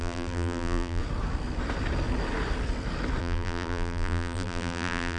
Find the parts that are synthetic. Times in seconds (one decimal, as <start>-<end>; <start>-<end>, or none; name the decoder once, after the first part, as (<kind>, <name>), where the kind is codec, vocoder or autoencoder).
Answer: 0.0-1.0 (vocoder, BigVGAN v2); 3.2-5.2